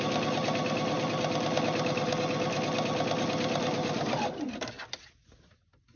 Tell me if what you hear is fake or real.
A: real